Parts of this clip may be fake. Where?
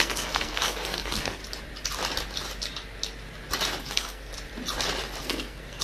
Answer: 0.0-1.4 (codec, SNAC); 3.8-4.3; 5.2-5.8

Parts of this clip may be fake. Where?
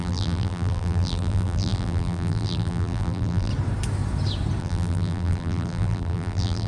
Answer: 0.0-3.5 (vocoder, BigVGAN v2); 4.6-6.7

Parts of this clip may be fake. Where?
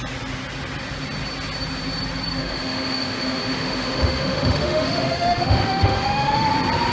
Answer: 2.4-6.5 (autoencoder, DAC-VAE)